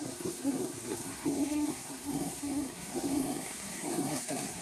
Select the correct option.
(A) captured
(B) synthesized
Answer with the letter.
B